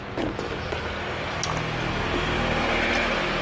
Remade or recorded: recorded